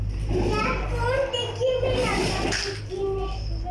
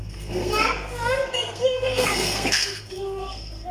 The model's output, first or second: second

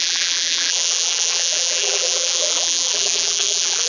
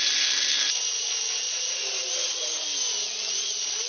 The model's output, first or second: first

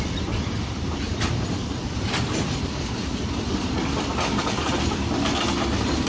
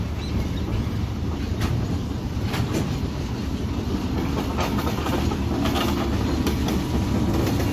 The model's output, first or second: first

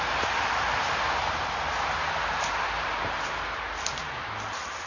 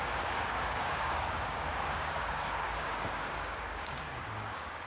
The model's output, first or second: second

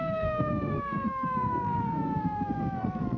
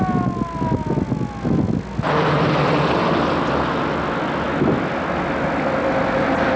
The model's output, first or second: first